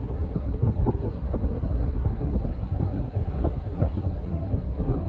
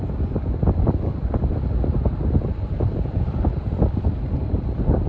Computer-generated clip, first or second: first